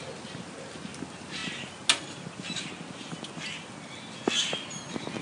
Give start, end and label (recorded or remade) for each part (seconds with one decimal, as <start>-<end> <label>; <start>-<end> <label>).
0.0-5.2 recorded